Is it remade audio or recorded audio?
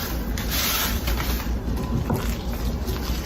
recorded